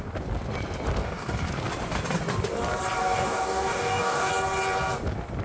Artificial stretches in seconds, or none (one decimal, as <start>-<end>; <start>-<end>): 1.0-1.5; 3.0-4.3